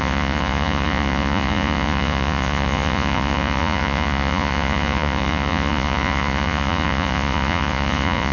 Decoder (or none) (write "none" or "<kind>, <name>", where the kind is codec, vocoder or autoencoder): vocoder, Vocos